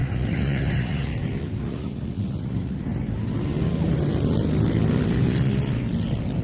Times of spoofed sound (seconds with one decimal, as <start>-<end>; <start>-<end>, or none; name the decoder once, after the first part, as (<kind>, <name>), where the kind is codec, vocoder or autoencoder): 0.0-1.1 (vocoder, Vocos); 1.6-2.9

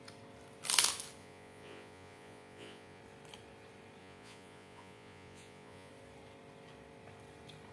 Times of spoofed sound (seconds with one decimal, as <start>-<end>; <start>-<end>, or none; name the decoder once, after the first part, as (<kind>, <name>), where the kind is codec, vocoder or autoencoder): 1.2-3.0 (vocoder, Vocos); 4.0-5.9

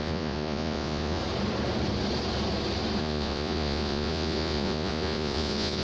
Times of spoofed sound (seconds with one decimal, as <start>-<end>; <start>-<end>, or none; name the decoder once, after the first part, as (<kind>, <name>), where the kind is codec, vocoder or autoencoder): 0.0-1.2 (vocoder, Vocos); 3.0-5.8

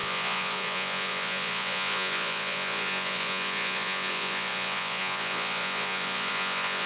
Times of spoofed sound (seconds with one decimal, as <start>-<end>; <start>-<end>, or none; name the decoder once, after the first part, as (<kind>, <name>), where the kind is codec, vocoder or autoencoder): 0.0-6.9 (vocoder, Vocos)